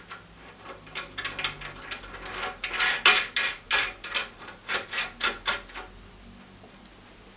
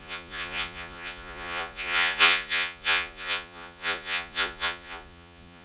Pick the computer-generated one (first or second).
second